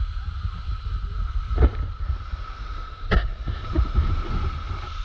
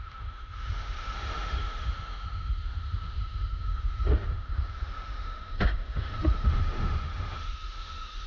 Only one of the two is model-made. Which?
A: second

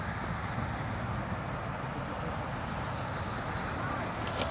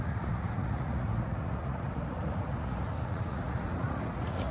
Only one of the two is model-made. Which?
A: second